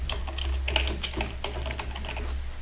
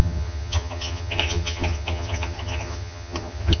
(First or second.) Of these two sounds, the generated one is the second